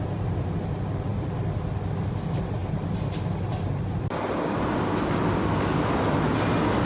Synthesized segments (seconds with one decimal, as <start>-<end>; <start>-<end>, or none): none